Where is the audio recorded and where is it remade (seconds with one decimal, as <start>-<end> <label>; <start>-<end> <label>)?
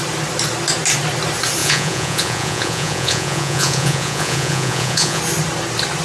0.0-1.6 recorded; 1.6-5.2 remade; 5.2-6.0 recorded